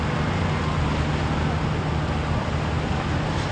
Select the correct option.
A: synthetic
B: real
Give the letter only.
B